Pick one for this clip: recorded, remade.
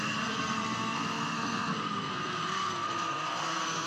remade